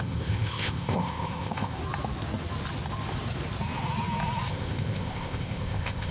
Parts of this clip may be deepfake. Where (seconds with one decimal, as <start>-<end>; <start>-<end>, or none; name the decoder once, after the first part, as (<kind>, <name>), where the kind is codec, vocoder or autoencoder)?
0.0-1.8 (codec, ZipCodec); 4.5-6.1